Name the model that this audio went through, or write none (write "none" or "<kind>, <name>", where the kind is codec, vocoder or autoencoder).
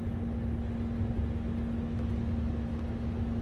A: none